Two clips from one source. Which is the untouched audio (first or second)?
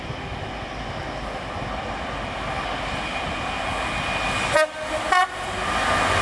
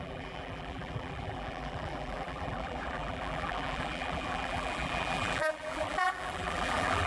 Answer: first